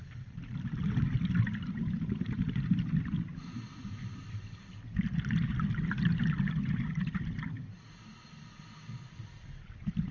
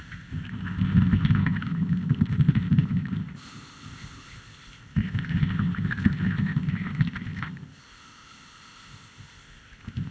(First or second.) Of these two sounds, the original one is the first